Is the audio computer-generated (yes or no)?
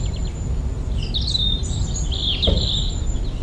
no